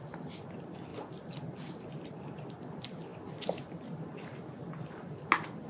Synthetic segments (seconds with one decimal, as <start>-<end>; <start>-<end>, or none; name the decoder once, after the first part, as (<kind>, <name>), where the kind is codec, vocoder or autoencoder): none